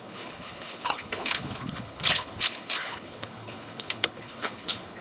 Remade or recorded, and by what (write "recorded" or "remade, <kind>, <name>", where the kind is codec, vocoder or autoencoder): remade, codec, HILCodec